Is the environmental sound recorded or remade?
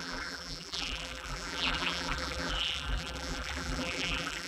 remade